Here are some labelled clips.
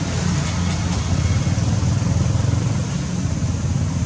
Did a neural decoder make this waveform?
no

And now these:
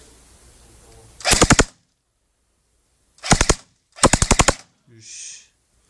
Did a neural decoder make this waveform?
no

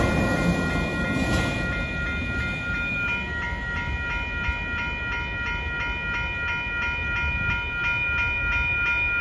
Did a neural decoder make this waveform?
no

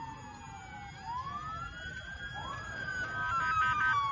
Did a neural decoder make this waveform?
no